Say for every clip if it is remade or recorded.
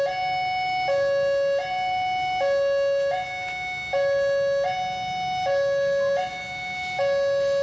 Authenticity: recorded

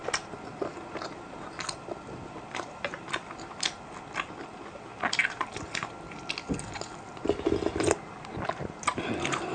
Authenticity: recorded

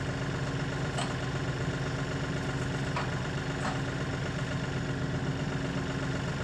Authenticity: recorded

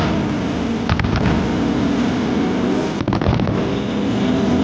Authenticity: recorded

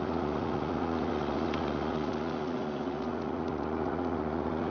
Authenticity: remade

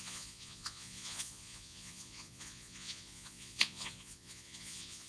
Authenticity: remade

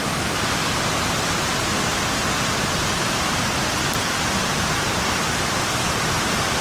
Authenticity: recorded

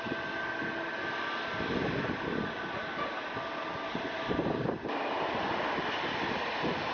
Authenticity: recorded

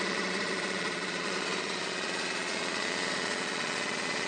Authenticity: remade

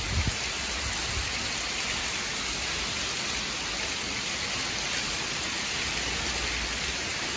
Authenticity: recorded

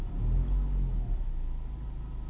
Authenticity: recorded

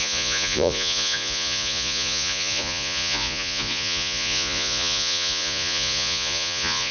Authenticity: remade